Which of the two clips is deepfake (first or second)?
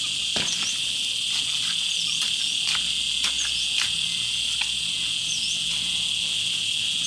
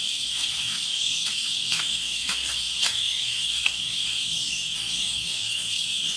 second